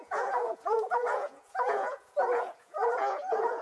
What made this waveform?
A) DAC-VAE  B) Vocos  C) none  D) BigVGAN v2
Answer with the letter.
B